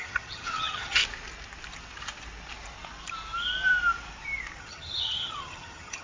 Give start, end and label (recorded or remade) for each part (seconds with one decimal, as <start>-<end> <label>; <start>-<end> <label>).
0.0-1.0 remade; 1.0-4.6 recorded; 4.6-6.0 remade